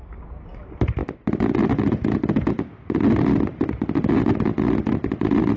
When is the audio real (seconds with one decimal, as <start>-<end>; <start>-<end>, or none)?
0.0-5.6